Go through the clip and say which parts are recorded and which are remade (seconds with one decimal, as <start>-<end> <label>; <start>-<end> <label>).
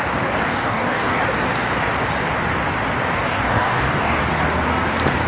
0.0-0.5 recorded; 0.5-1.2 remade; 1.2-3.3 recorded; 3.3-4.2 remade; 4.2-5.3 recorded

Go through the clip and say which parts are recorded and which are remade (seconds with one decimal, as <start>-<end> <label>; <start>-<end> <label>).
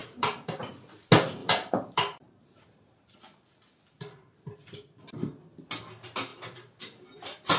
0.0-0.6 remade; 0.6-1.4 recorded; 1.4-2.6 remade; 2.6-6.3 recorded; 6.3-7.6 remade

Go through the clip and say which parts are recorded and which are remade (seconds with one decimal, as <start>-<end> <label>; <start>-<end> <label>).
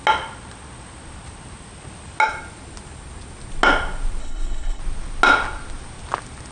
0.0-4.2 recorded; 4.2-4.8 remade; 4.8-6.5 recorded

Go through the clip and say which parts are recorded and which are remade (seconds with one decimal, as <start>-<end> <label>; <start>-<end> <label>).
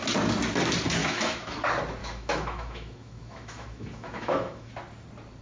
0.0-1.0 recorded; 1.0-1.6 remade; 1.6-2.0 recorded; 2.0-4.7 remade; 4.7-5.4 recorded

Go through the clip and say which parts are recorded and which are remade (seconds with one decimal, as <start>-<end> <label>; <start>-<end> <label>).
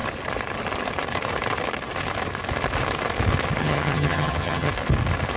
0.0-3.6 recorded; 3.6-4.7 remade; 4.7-5.4 recorded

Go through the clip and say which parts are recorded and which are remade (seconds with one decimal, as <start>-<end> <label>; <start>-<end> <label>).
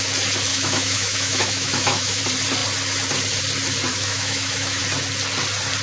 0.0-0.5 recorded; 0.5-2.2 remade; 2.2-3.9 recorded; 3.9-4.8 remade; 4.8-5.8 recorded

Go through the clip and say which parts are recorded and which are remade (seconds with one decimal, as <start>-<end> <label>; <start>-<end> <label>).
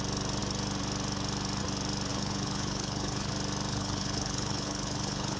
0.0-2.1 recorded; 2.1-3.3 remade; 3.3-3.7 recorded; 3.7-5.4 remade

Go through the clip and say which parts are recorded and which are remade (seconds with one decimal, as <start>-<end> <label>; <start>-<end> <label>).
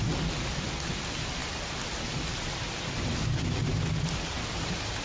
0.0-5.0 recorded